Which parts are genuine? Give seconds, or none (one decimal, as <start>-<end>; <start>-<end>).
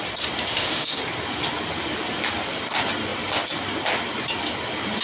0.0-0.5; 1.0-5.0